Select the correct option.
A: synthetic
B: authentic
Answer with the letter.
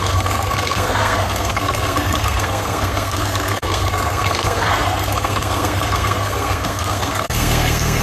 A